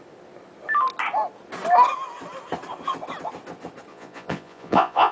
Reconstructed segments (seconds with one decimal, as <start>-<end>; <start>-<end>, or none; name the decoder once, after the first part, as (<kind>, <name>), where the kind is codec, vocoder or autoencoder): 3.9-5.1 (vocoder, Vocos)